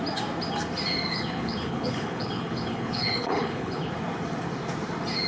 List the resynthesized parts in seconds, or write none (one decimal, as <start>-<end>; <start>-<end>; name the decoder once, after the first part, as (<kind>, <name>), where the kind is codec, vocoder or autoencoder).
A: 1.1-3.9 (codec, HILCodec)